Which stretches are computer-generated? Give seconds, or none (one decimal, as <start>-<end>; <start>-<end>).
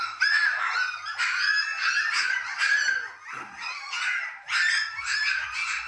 none